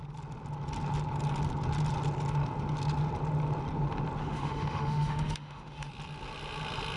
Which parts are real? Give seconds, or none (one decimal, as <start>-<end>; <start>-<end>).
0.0-4.2; 5.9-7.0